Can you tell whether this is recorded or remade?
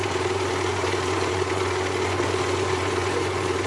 remade